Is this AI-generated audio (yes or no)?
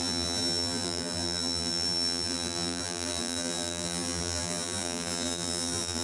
yes